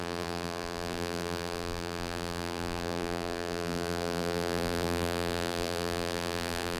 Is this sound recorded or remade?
remade